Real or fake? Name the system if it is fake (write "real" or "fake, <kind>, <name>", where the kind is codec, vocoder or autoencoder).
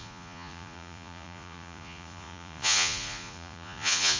fake, vocoder, Vocos